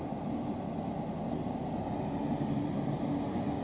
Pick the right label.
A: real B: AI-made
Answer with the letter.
A